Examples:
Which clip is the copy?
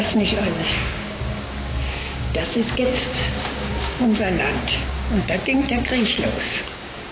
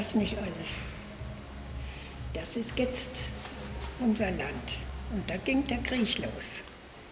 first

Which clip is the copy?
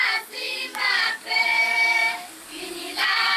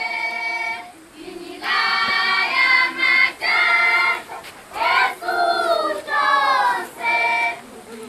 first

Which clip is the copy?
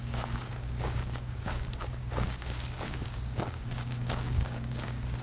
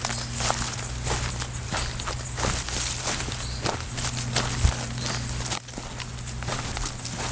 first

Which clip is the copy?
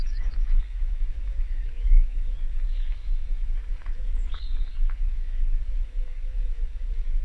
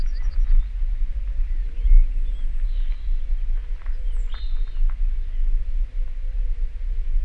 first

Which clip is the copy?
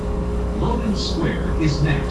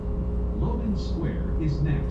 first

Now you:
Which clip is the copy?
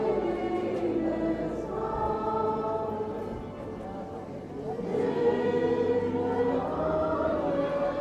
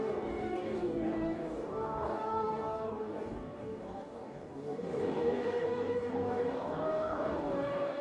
second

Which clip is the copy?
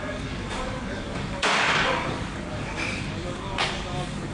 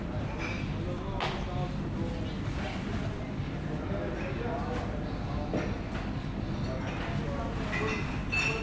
first